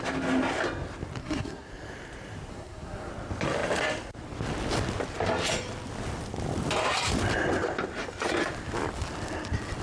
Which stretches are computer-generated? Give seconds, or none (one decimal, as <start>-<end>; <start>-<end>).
1.2-1.7; 2.5-3.1